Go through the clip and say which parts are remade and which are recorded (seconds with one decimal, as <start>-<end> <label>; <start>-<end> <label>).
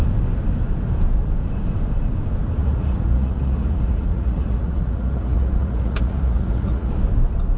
0.0-2.6 recorded; 2.6-6.9 remade; 6.9-7.6 recorded